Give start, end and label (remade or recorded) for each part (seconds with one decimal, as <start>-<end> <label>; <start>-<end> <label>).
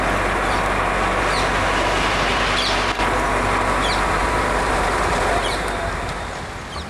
0.0-4.2 recorded; 4.2-6.5 remade; 6.5-6.9 recorded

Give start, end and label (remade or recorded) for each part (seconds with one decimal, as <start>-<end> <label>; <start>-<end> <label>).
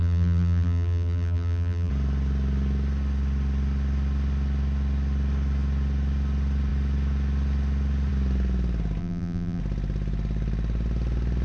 0.0-1.9 remade; 1.9-9.0 recorded; 9.0-9.6 remade; 9.6-11.4 recorded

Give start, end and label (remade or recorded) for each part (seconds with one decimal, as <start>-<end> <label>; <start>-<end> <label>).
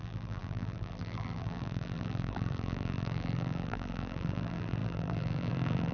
0.0-5.9 remade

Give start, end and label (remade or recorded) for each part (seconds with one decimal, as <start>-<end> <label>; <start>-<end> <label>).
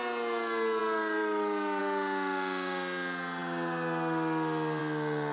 0.0-0.8 recorded; 0.8-1.8 remade; 1.8-5.3 recorded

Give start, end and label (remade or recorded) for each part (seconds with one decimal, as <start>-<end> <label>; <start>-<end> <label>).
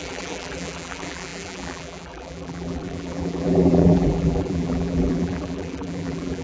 0.0-6.4 remade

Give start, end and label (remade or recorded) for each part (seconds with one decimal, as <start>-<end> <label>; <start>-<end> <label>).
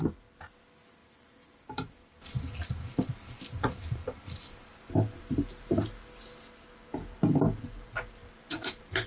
0.0-1.0 recorded; 1.0-4.7 remade; 4.7-8.2 recorded; 8.2-9.1 remade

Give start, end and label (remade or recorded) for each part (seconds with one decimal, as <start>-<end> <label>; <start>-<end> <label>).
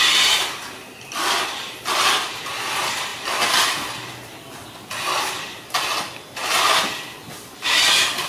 0.0-8.3 recorded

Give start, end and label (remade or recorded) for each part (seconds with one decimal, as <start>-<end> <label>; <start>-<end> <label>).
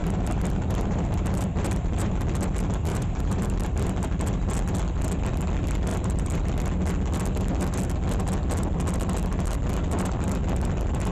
0.0-2.2 remade; 2.2-2.9 recorded; 2.9-4.5 remade; 4.5-5.9 recorded; 5.9-6.5 remade; 6.5-11.1 recorded